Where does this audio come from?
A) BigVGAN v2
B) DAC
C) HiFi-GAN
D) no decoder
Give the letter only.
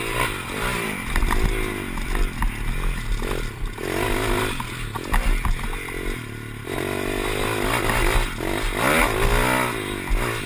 D